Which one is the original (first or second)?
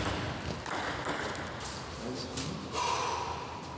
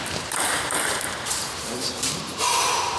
first